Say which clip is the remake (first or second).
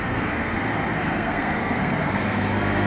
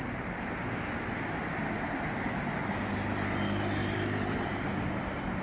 first